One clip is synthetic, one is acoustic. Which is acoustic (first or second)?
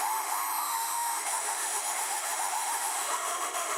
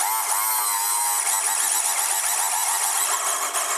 second